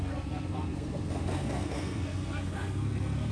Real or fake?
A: fake